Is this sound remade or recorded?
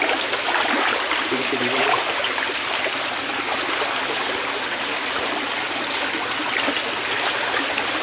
recorded